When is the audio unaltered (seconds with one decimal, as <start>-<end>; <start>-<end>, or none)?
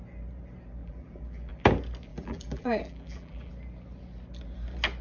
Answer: 0.0-0.8; 1.6-2.1; 3.5-5.0